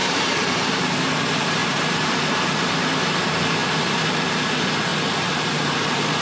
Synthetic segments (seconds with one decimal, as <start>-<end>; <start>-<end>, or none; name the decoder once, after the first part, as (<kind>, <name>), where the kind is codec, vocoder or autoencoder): 0.0-4.9 (vocoder, BigVGAN v2); 5.5-6.2